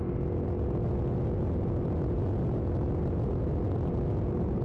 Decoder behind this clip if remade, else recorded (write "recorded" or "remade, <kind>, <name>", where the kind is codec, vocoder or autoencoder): recorded